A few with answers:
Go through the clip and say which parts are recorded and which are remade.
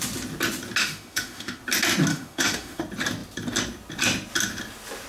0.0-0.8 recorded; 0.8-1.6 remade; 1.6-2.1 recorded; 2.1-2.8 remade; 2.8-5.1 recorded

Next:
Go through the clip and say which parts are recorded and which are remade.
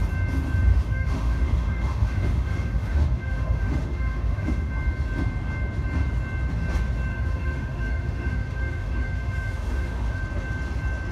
0.0-0.7 recorded; 0.7-4.7 remade; 4.7-7.1 recorded; 7.1-10.2 remade; 10.2-11.1 recorded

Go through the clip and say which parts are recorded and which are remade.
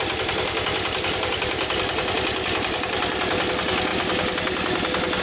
0.0-5.2 recorded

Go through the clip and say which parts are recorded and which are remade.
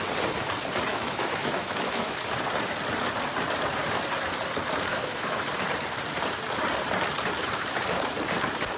0.0-0.9 recorded; 0.9-2.2 remade; 2.2-4.9 recorded; 4.9-5.4 remade; 5.4-8.8 recorded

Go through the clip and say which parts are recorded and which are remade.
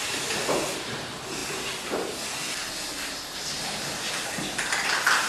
0.0-5.3 recorded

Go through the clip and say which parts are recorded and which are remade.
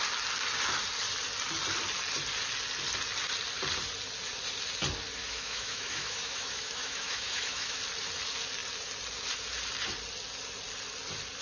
0.0-5.2 recorded; 5.2-7.8 remade; 7.8-11.4 recorded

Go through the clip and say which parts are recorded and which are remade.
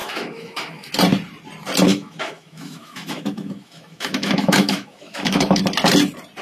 0.0-0.9 remade; 0.9-1.9 recorded; 1.9-5.6 remade; 5.6-6.4 recorded